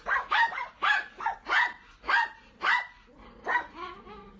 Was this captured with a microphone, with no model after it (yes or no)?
yes